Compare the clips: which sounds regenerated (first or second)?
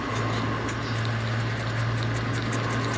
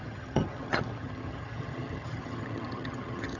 second